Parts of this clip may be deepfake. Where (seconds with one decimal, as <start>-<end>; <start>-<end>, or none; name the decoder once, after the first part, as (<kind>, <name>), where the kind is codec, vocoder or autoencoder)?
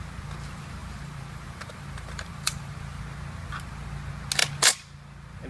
0.8-3.0 (vocoder, BigVGAN v2)